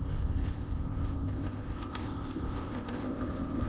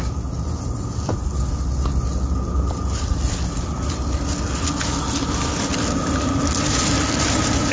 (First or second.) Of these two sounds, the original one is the second